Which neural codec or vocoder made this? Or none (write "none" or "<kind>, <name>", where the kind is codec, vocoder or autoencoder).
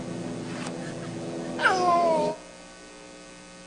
none